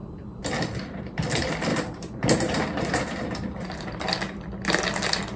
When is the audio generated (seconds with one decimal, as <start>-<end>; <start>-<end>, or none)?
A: 1.7-4.1